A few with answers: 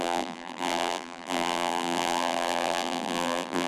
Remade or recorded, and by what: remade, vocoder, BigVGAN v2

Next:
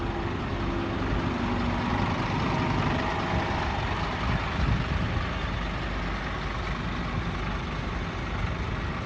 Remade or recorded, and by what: recorded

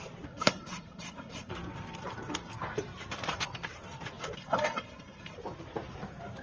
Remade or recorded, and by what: remade, vocoder, BigVGAN v2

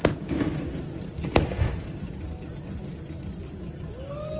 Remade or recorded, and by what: recorded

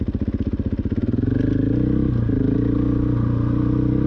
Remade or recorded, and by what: recorded